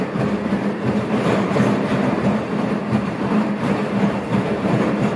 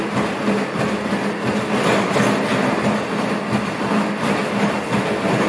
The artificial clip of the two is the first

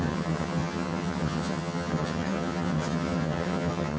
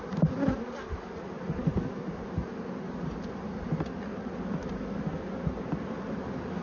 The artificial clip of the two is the first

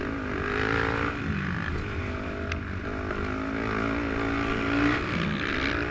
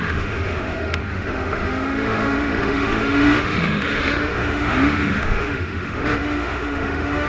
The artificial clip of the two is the second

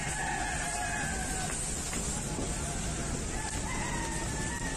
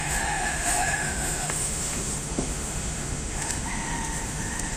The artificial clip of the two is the second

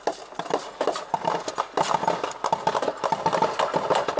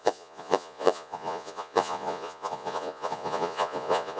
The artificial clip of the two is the second